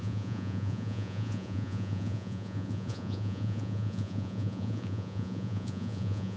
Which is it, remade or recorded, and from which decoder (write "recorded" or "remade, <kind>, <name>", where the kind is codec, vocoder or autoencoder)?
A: remade, vocoder, Vocos